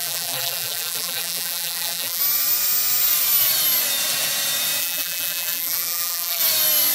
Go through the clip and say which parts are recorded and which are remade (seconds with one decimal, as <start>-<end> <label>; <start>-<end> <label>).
0.0-2.2 remade; 2.2-4.8 recorded; 4.8-6.4 remade; 6.4-6.9 recorded

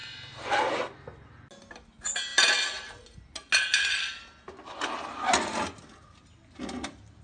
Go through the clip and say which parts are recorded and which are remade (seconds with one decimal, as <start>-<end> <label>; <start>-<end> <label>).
0.0-7.2 recorded

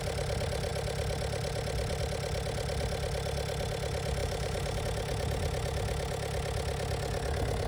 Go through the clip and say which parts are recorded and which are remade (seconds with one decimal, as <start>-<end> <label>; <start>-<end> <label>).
0.0-4.2 recorded; 4.2-4.8 remade; 4.8-7.7 recorded

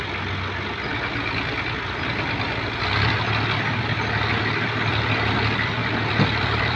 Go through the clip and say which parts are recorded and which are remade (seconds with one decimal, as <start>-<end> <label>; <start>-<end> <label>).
0.0-5.8 recorded; 5.8-6.8 remade

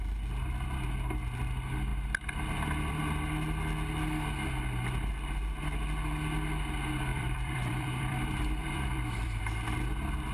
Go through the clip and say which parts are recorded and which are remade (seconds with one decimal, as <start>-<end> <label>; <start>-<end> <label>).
0.0-7.1 recorded; 7.1-9.4 remade; 9.4-10.3 recorded

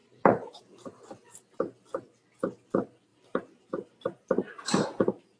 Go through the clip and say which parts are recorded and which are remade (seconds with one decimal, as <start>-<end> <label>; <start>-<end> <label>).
0.0-0.6 remade; 0.6-3.1 recorded; 3.1-3.7 remade; 3.7-5.4 recorded

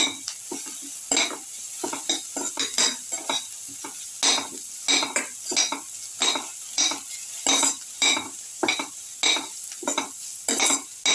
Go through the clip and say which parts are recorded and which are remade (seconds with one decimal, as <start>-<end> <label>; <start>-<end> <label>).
0.0-7.2 recorded; 7.2-8.9 remade; 8.9-11.1 recorded